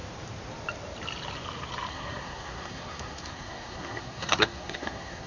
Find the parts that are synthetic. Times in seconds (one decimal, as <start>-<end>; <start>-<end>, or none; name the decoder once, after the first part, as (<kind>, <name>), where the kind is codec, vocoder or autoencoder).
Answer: 1.9-5.3 (codec, SNAC)